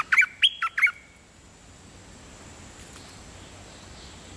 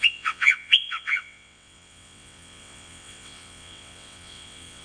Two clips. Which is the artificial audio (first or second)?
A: second